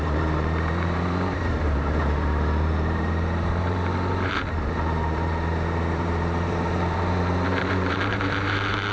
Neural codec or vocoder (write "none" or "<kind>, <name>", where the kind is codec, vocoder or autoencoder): vocoder, BigVGAN v2